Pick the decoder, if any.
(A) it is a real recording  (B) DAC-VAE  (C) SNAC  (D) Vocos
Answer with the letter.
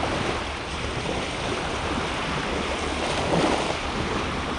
A